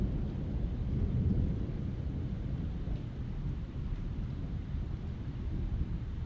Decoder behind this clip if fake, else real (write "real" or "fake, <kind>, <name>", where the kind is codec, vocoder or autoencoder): real